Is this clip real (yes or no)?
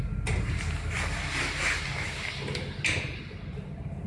yes